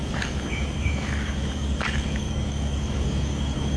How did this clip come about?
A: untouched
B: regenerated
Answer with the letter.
B